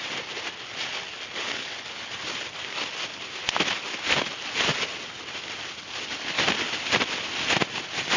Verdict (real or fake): real